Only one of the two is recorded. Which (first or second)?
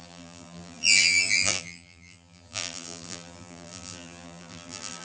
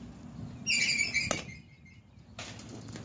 second